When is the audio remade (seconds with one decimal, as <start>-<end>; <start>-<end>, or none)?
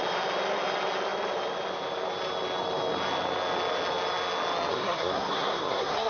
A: 4.7-6.1